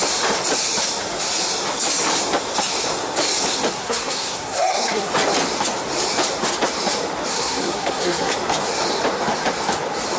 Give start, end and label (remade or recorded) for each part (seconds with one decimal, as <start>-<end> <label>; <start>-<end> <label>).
0.0-3.7 recorded; 3.7-5.1 remade; 5.1-7.3 recorded; 7.3-8.3 remade; 8.3-10.2 recorded